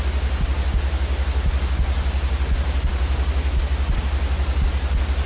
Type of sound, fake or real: real